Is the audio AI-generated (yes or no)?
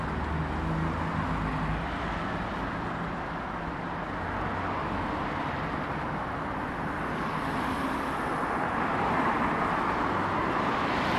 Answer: no